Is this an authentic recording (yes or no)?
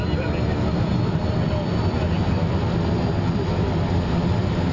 yes